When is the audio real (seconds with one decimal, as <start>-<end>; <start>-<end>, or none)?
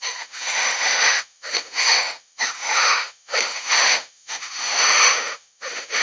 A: none